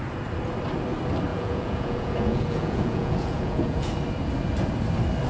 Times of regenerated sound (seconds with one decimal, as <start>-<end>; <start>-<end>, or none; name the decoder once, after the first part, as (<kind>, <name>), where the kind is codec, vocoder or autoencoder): 1.3-3.9 (vocoder, Vocos)